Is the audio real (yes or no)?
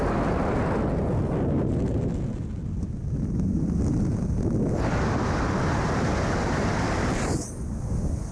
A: yes